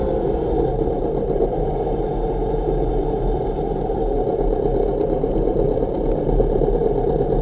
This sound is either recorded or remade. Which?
recorded